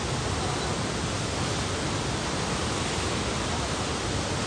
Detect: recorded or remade recorded